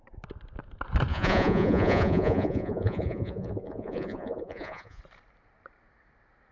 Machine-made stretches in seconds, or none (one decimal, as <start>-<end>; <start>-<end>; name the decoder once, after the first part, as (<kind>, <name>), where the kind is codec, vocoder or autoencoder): 1.1-5.0 (vocoder, Vocos)